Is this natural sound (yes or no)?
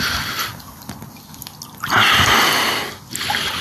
yes